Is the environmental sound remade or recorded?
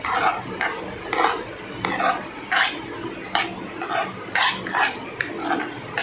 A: recorded